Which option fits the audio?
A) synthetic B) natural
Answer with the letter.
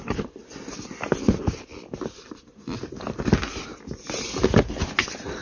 B